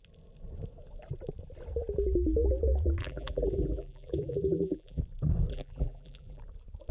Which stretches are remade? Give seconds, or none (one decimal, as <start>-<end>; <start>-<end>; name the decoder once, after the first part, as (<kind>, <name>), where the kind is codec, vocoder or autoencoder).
3.0-5.0 (vocoder, BigVGAN v2); 5.5-6.4